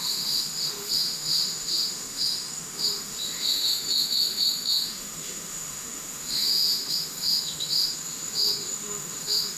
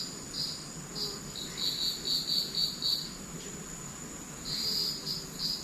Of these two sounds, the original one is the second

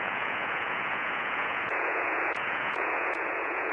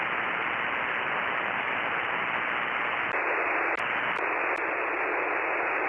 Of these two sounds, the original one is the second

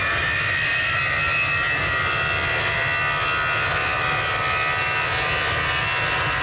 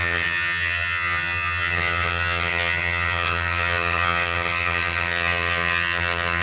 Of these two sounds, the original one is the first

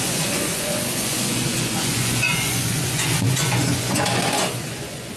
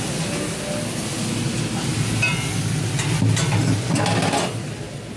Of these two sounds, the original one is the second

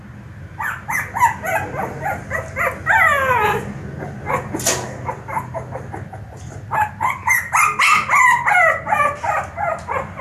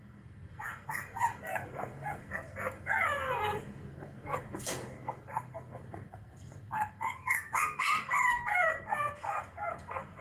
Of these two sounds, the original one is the first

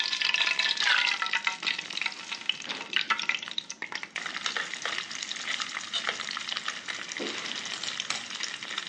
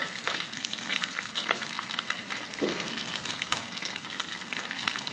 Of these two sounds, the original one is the first